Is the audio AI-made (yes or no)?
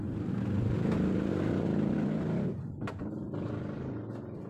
no